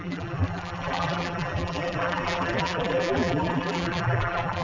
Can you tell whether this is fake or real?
fake